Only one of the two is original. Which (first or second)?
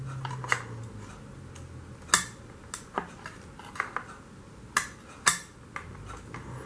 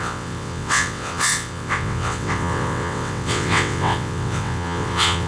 first